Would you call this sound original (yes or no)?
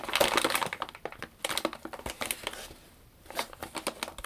yes